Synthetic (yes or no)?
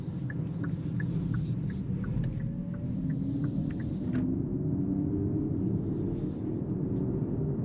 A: no